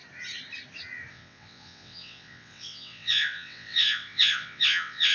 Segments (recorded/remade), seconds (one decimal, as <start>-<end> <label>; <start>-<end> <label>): 0.0-1.1 recorded; 1.1-5.1 remade